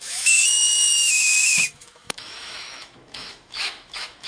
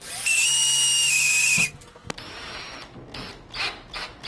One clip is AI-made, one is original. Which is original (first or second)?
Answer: second